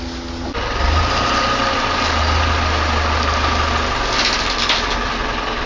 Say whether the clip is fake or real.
real